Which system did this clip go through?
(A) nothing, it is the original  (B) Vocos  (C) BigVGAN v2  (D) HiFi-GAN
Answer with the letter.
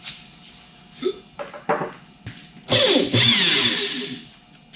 A